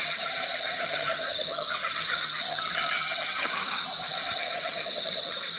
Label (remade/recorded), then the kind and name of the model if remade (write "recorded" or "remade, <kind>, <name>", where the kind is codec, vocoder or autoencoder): remade, vocoder, HiFi-GAN